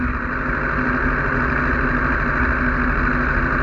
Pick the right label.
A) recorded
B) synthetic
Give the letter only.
A